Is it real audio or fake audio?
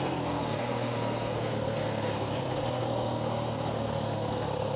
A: fake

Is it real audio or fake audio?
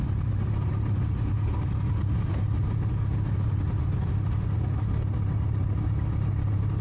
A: real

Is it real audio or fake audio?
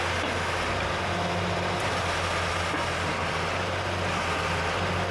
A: real